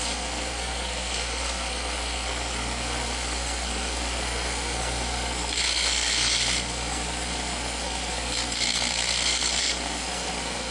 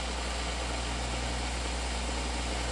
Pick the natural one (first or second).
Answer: second